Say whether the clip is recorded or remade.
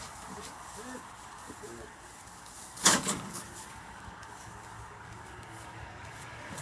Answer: remade